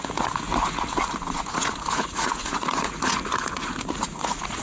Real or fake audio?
fake